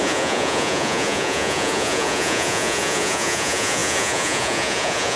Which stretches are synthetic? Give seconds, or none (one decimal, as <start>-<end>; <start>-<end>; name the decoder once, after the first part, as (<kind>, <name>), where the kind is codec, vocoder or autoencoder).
0.0-5.2 (vocoder, Vocos)